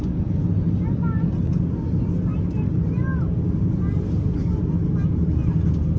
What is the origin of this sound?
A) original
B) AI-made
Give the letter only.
A